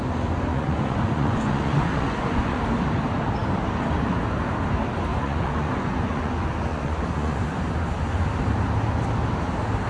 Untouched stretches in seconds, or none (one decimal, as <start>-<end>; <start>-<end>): 0.0-0.5; 2.6-5.1; 6.3-6.7; 7.4-9.9